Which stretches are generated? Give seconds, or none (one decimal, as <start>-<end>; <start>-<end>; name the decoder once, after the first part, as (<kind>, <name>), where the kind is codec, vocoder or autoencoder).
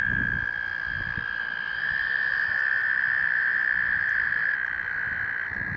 none